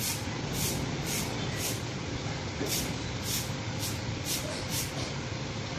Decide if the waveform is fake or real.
real